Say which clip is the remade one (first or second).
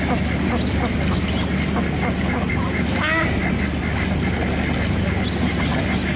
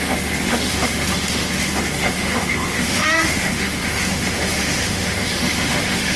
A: second